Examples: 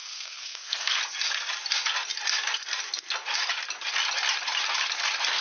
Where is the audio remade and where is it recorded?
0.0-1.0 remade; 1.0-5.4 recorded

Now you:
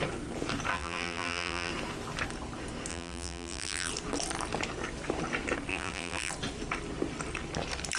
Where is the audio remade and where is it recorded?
0.0-0.7 recorded; 0.7-1.7 remade; 1.7-2.9 recorded; 2.9-3.9 remade; 3.9-5.7 recorded; 5.7-6.3 remade; 6.3-8.0 recorded